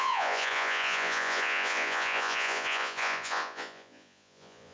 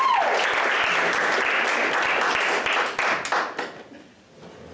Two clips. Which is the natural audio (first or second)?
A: second